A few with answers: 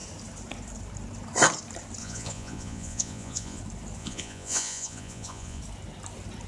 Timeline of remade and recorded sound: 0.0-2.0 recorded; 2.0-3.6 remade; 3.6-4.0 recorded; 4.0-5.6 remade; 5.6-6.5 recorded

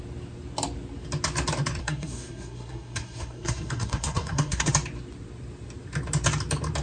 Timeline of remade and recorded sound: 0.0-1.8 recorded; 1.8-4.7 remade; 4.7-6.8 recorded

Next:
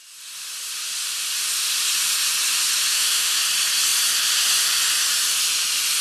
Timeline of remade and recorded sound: 0.0-2.9 recorded; 2.9-3.4 remade; 3.4-6.0 recorded

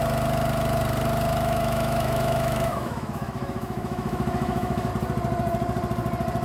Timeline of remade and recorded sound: 0.0-1.3 recorded; 1.3-4.9 remade; 4.9-6.4 recorded

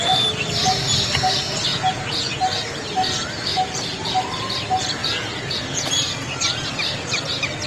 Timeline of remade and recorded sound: 0.0-1.7 recorded; 1.7-2.9 remade; 2.9-3.5 recorded; 3.5-4.2 remade; 4.2-5.0 recorded; 5.0-5.9 remade; 5.9-7.7 recorded

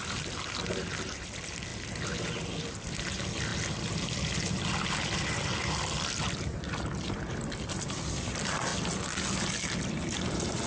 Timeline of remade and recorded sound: 0.0-1.7 remade; 1.7-2.7 recorded; 2.7-3.5 remade; 3.5-7.7 recorded; 7.7-8.7 remade; 8.7-10.2 recorded; 10.2-10.7 remade

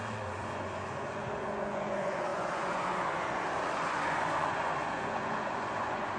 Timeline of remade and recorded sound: 0.0-6.2 remade